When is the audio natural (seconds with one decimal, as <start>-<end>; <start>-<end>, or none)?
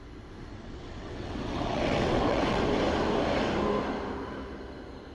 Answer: 0.0-0.5; 2.6-5.1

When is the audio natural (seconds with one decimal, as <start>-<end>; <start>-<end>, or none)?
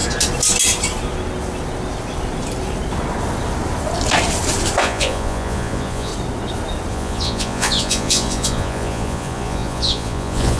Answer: 0.0-4.8; 6.1-6.9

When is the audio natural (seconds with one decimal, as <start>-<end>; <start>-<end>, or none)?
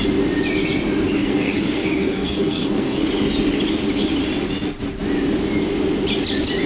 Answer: 0.0-1.2; 3.1-6.7